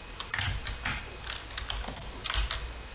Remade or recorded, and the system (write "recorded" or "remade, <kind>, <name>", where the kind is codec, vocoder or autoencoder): recorded